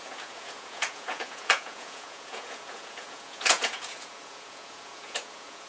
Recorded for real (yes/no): no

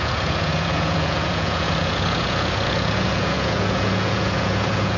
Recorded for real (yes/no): no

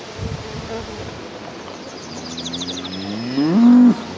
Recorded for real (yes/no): yes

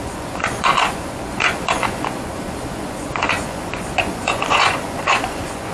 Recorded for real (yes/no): no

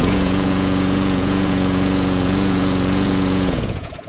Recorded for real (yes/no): no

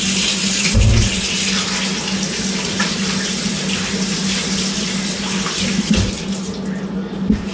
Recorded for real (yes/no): yes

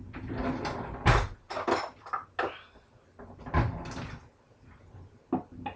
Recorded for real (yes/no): yes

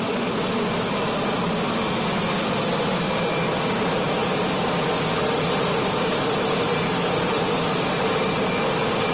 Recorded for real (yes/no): yes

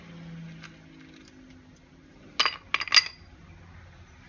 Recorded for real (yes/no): yes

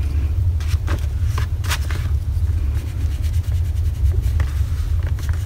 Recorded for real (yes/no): yes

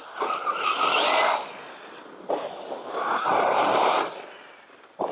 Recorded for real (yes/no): yes